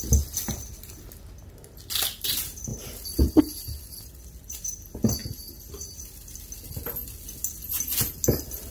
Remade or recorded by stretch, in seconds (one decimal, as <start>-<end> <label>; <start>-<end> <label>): 0.0-2.7 recorded; 2.7-3.4 remade; 3.4-8.7 recorded